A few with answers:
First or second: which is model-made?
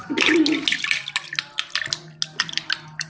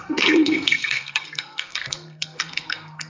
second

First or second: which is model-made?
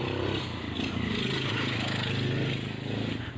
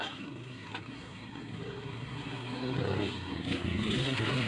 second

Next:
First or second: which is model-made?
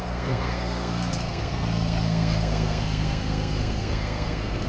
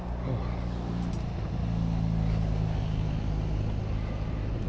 first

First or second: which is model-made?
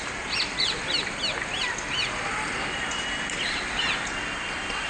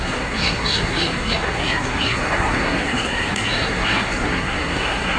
second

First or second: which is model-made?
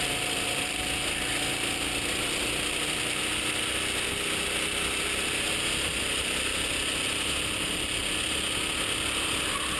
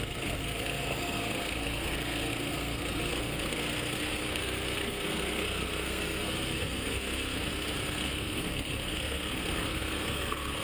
second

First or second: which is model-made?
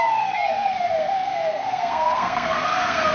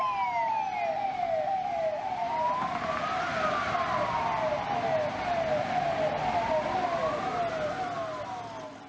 first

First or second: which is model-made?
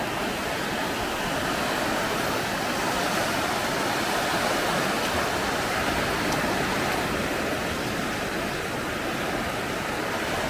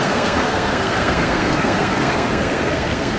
second